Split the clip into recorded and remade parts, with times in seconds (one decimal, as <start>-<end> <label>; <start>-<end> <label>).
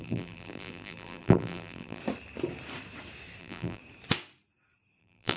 0.0-2.0 remade; 2.0-3.4 recorded; 3.4-3.8 remade; 3.8-5.0 recorded; 5.0-5.4 remade